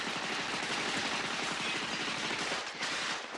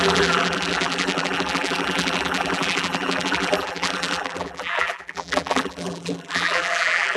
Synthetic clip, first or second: second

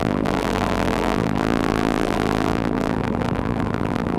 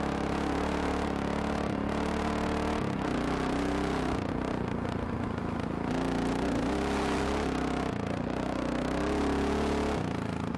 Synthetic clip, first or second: first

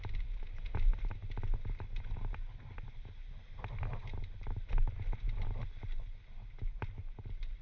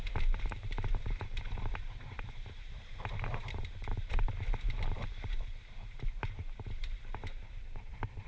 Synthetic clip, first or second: second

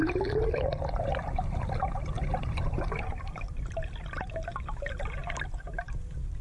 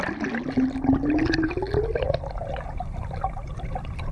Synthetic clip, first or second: first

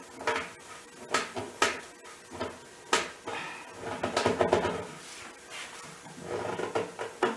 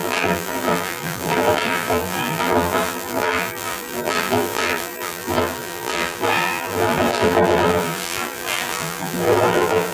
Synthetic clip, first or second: second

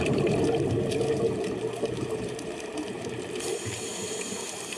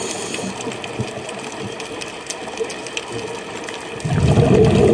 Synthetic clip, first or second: first